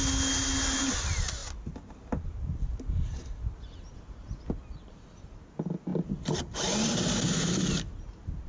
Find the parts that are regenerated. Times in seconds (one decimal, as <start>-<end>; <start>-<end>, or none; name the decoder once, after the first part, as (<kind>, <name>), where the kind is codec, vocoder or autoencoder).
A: none

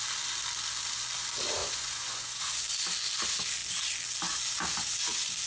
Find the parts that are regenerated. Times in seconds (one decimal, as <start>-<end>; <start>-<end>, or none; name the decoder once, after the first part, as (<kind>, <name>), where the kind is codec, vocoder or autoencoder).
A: 1.6-2.5 (vocoder, Vocos)

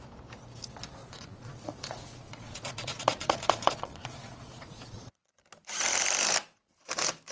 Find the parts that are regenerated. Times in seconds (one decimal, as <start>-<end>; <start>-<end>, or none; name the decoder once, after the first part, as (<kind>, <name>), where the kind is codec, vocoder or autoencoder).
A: 1.0-5.4 (vocoder, Vocos)

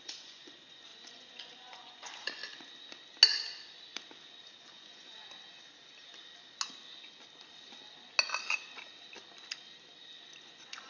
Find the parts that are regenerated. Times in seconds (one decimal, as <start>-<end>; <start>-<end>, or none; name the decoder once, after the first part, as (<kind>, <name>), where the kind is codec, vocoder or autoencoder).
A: 0.0-2.4 (vocoder, Vocos); 4.6-5.2; 10.4-10.9